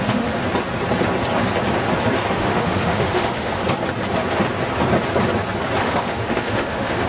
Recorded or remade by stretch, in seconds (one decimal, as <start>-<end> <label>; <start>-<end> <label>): 0.0-0.4 remade; 0.4-2.3 recorded; 2.3-3.5 remade; 3.5-5.8 recorded; 5.8-7.1 remade